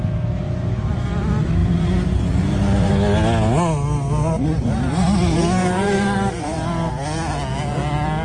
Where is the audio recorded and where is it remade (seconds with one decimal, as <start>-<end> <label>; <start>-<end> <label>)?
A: 0.0-1.6 recorded; 1.6-2.9 remade; 2.9-5.6 recorded; 5.6-6.4 remade; 6.4-8.2 recorded